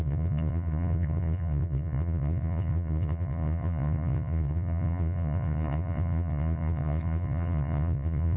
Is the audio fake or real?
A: fake